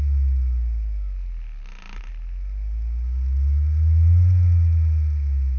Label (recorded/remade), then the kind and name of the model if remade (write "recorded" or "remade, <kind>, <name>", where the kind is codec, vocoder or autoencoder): recorded